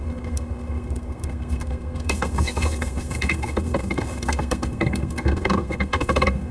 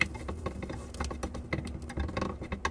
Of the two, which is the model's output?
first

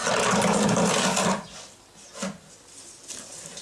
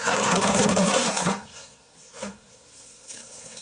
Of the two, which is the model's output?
second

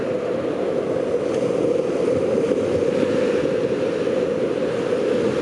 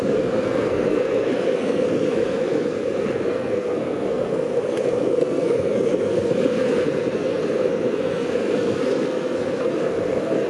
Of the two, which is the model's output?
second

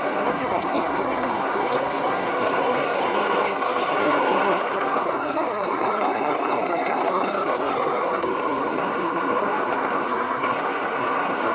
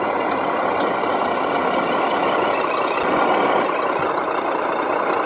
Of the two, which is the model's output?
first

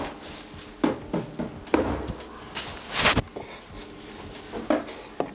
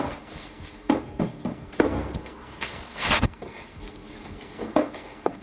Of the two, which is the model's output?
second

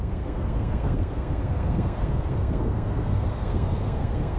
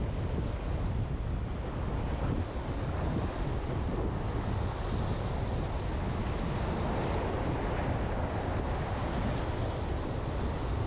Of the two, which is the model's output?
first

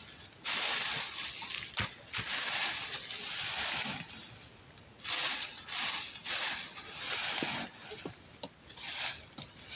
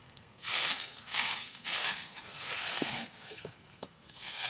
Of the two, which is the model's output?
second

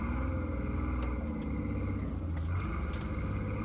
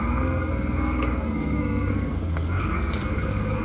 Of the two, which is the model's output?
second